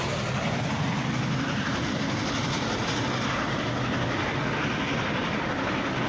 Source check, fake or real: real